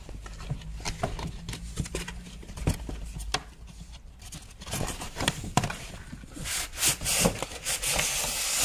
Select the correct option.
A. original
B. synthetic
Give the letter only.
A